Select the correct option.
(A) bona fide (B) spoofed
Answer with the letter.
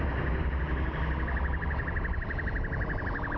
A